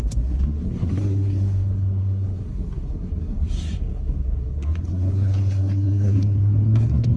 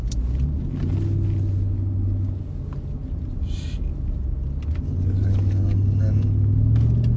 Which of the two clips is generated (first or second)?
first